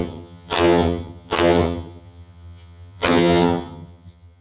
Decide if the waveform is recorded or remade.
remade